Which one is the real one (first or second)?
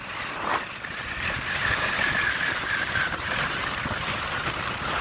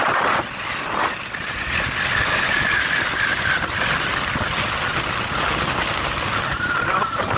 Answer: second